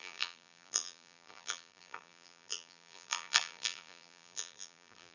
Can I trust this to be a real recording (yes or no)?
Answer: no